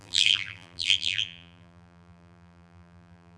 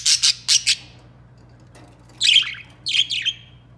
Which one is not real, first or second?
first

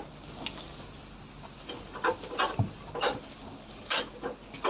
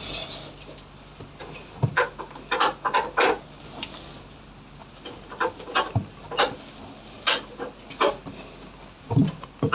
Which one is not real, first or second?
first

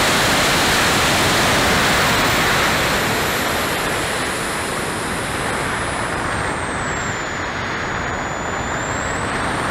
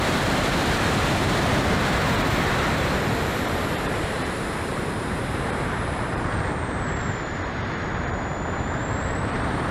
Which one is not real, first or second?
second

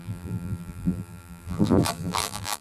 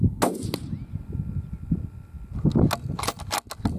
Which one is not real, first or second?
first